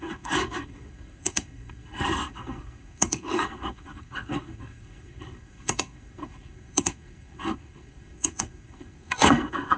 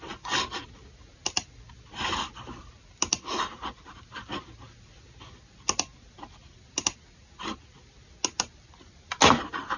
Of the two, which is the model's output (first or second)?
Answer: first